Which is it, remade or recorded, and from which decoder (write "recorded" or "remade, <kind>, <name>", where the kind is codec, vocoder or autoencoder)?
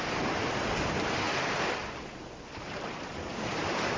recorded